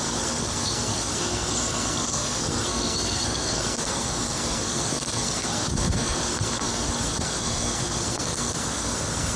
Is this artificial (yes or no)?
yes